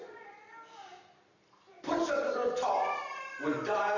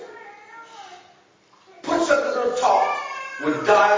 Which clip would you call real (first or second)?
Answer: second